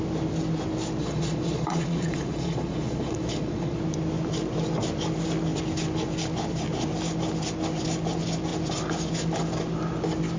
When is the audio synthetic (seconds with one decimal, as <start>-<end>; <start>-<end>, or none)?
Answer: 1.0-3.8